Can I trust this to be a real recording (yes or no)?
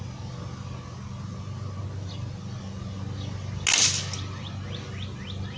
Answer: yes